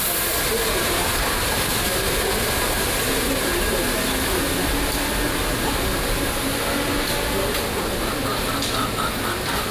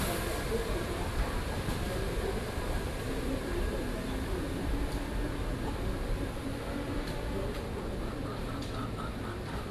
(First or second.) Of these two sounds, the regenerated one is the second